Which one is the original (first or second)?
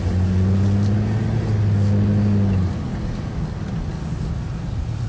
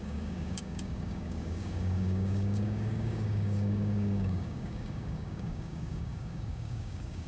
first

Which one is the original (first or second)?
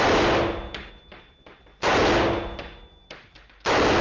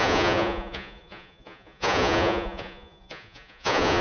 first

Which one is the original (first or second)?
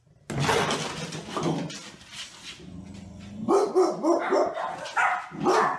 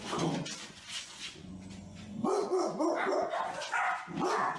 first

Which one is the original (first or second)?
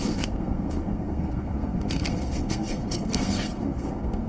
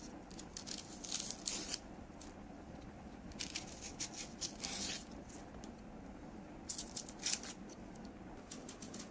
second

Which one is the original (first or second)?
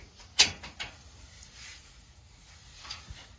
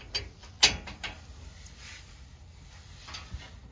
second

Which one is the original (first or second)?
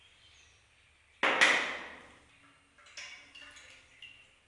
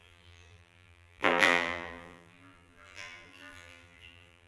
first